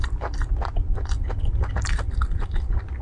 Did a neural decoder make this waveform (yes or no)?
no